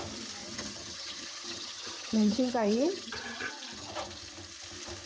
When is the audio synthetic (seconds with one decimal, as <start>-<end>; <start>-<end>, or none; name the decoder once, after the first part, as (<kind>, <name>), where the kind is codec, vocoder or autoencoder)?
0.4-3.5 (vocoder, HiFi-GAN)